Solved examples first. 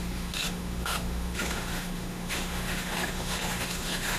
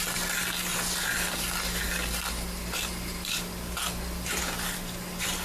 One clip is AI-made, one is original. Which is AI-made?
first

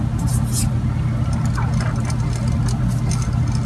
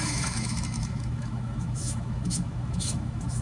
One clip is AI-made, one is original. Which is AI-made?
second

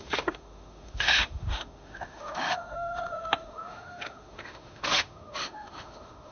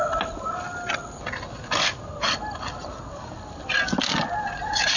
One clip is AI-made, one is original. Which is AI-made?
first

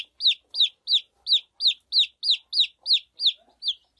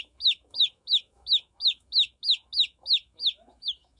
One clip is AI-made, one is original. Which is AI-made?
second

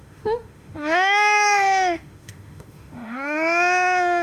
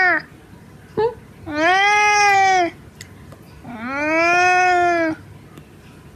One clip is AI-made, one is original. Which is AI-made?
first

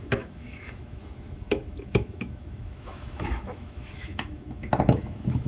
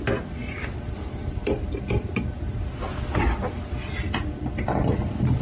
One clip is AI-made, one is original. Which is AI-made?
first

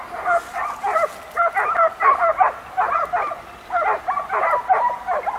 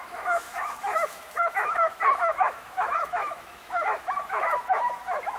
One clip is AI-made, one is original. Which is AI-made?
second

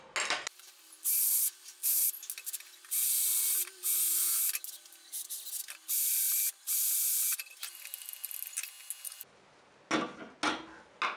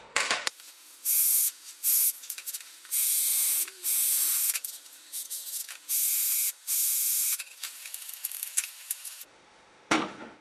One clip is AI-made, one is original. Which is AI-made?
second